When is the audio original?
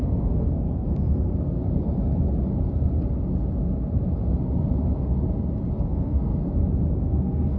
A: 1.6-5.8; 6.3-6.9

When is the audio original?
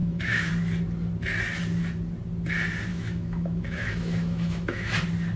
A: 0.5-2.9; 4.9-5.4